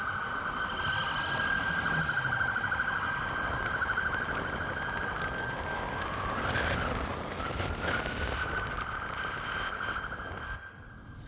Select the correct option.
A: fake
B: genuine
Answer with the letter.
B